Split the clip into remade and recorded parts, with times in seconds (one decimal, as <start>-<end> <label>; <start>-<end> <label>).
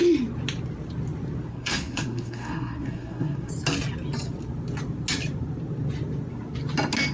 0.0-1.5 recorded; 1.5-3.5 remade; 3.5-7.1 recorded